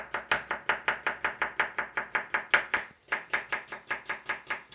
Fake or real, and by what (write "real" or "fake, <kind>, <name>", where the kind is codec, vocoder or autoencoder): real